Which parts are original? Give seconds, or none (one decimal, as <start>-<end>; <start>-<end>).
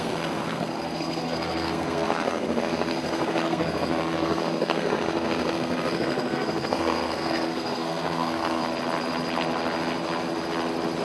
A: 8.6-11.0